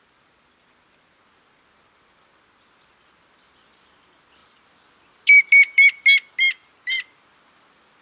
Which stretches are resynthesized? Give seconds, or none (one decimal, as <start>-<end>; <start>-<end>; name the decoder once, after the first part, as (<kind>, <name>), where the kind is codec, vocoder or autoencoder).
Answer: none